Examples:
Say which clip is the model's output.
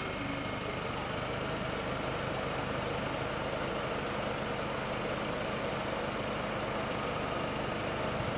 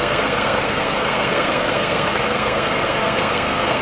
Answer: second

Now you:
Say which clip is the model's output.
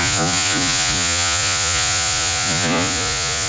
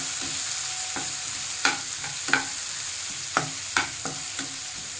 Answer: first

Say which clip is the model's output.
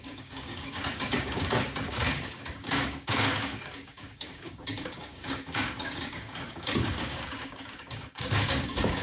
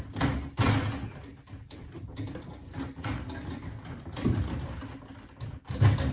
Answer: first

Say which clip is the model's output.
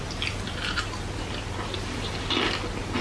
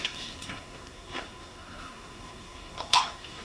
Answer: second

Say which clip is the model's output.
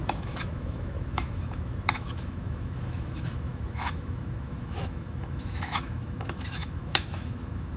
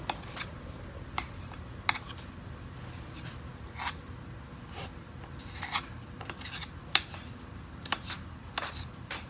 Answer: first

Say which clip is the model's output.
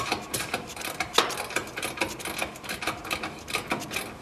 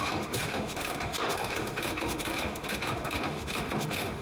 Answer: second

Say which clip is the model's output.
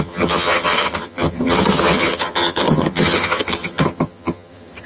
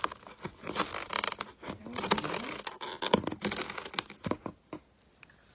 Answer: first